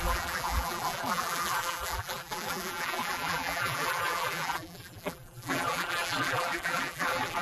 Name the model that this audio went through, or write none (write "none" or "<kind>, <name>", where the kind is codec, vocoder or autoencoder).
vocoder, BigVGAN v2